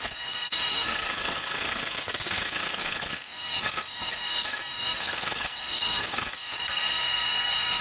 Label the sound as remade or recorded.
remade